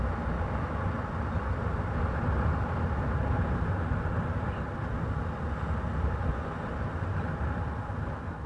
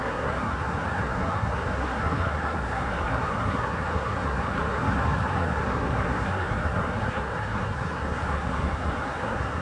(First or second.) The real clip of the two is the first